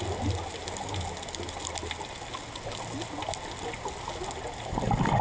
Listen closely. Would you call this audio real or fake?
real